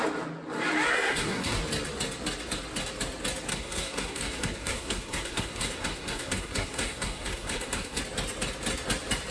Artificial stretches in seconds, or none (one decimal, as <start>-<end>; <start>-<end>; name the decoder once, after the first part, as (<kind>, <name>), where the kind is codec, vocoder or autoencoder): 0.9-1.6 (codec, SNAC); 3.5-8.0